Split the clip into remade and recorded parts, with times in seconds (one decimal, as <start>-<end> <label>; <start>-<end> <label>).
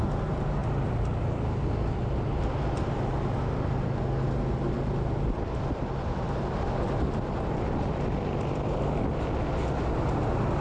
0.0-10.6 recorded